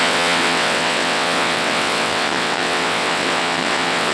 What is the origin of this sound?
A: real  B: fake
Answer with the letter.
B